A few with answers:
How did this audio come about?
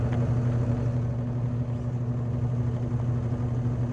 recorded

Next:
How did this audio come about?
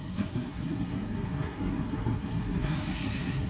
remade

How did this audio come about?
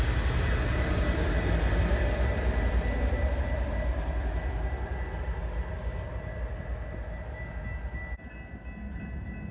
recorded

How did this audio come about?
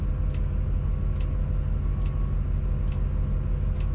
recorded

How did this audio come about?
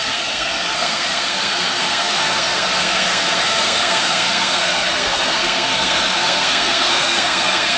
remade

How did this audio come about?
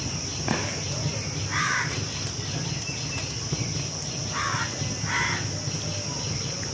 recorded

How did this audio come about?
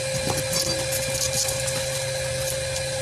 recorded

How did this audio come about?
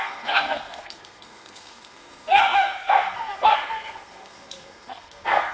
remade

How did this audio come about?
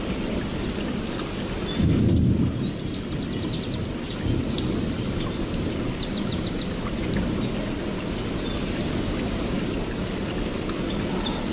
recorded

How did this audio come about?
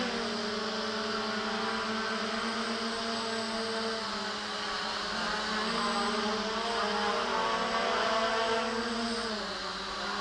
recorded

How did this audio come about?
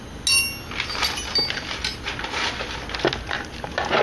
recorded